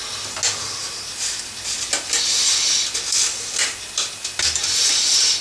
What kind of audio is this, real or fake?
real